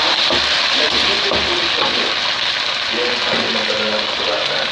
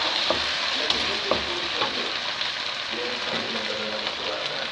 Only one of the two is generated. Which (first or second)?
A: second